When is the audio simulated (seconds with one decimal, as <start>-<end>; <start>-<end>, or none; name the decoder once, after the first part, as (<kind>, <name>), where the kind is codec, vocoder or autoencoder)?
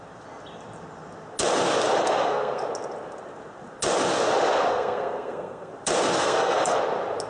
2.0-2.6 (codec, SNAC); 4.7-5.7; 6.2-6.8